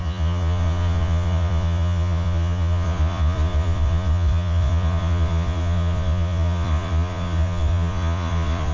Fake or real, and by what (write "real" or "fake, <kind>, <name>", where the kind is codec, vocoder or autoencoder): fake, vocoder, Vocos